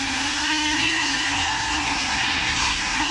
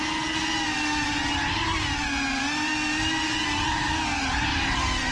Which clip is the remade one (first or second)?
first